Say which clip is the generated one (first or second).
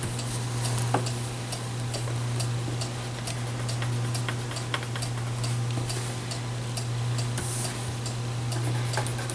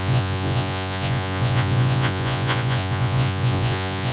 second